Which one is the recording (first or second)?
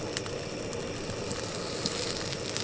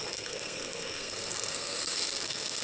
first